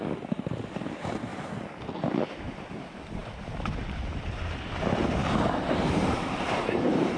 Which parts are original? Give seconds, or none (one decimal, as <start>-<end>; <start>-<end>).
0.0-6.0